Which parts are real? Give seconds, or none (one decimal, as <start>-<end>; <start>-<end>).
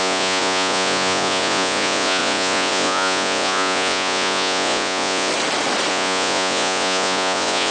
5.3-5.9